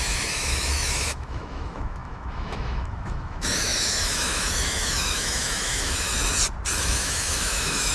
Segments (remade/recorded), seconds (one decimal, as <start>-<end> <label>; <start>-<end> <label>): 0.0-6.1 remade; 6.1-6.8 recorded; 6.8-7.9 remade